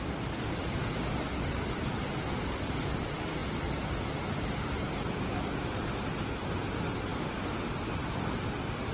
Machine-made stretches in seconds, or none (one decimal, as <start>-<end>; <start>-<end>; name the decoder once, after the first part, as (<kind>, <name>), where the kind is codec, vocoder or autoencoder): none